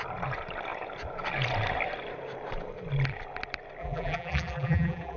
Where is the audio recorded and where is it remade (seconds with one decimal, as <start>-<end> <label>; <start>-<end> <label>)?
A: 0.0-3.8 recorded; 3.8-5.2 remade